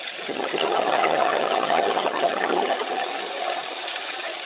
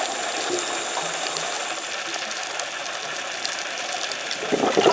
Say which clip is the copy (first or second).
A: first